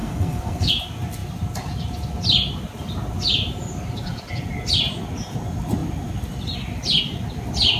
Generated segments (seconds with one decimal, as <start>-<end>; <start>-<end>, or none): 0.0-0.7